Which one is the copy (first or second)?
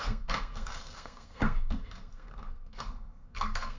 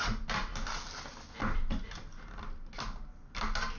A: first